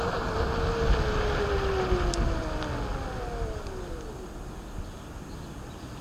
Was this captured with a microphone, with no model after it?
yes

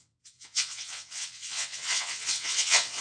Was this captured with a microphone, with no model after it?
no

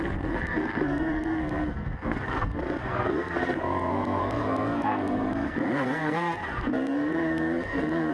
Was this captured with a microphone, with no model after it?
no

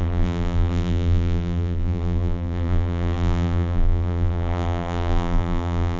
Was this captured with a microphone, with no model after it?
no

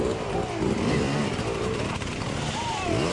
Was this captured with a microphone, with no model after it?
yes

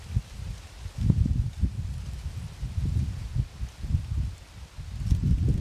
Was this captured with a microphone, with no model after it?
yes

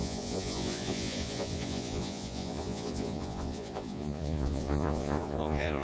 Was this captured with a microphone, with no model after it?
no